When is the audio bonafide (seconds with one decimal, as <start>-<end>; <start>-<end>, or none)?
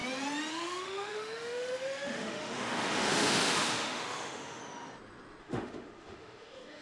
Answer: 0.0-0.5; 4.6-5.4